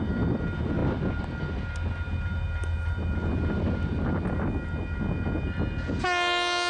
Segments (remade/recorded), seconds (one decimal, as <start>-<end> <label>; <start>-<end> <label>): 0.0-6.7 recorded